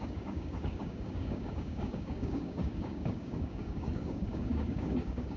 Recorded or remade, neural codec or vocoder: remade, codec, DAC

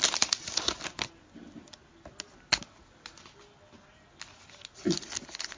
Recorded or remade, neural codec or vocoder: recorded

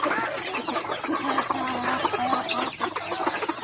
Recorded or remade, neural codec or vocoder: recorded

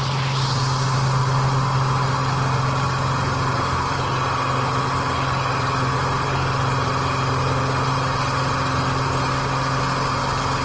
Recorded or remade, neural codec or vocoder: recorded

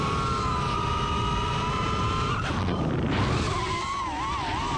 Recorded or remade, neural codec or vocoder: recorded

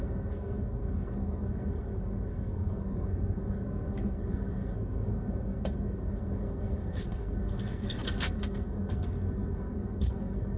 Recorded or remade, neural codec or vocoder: remade, codec, SNAC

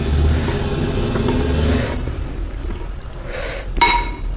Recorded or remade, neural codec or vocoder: recorded